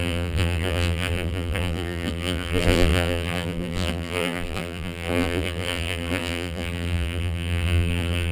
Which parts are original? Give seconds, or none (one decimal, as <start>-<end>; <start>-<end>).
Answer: none